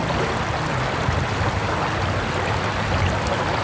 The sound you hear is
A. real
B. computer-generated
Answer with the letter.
A